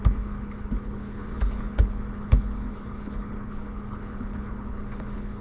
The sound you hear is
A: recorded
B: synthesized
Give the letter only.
B